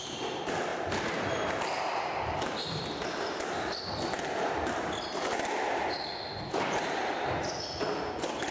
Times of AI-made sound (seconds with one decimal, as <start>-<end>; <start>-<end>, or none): none